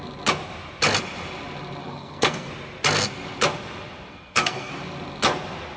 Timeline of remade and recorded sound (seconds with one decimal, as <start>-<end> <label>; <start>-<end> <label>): 0.0-1.8 recorded; 1.8-2.5 remade; 2.5-4.1 recorded; 4.1-4.7 remade; 4.7-5.8 recorded